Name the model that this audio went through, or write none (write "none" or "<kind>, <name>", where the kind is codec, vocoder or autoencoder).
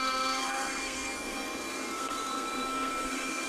codec, SNAC